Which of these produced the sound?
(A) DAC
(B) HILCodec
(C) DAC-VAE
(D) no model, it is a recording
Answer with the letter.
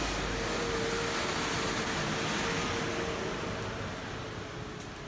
D